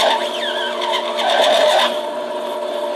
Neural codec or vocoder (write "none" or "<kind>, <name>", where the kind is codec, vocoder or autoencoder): vocoder, BigVGAN v2